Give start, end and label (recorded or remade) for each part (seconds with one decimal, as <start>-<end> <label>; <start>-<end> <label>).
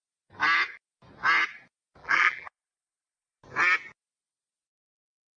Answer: 0.0-2.0 recorded; 2.0-3.4 remade; 3.4-5.4 recorded